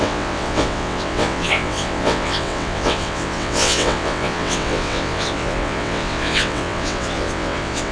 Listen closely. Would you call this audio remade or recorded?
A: remade